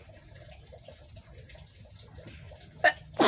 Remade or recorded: recorded